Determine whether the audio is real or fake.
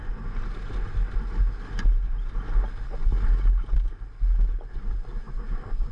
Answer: real